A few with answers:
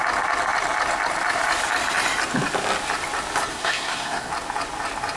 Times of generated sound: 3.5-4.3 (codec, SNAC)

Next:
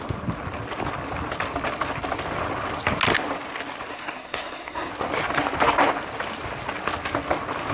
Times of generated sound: 3.9-4.9 (codec, SNAC)

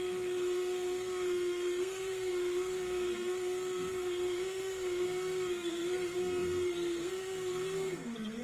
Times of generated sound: 0.0-8.4 (codec, SNAC)

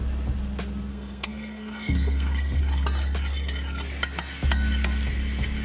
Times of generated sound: 0.9-2.6 (codec, SNAC)

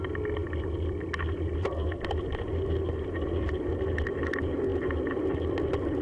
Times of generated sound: none

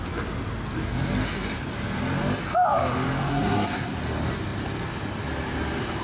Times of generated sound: 3.3-4.0 (codec, SNAC)